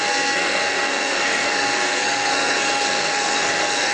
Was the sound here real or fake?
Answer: fake